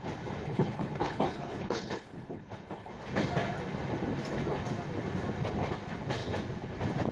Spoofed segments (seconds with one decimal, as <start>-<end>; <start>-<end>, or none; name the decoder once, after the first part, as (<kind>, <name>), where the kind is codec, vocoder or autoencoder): 0.4-2.9 (codec, HILCodec)